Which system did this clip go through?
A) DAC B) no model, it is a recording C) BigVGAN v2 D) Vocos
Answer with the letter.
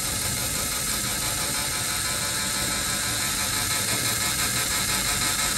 B